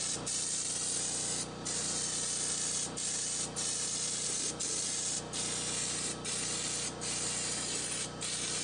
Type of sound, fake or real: real